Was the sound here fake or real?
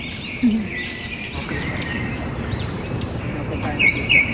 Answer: fake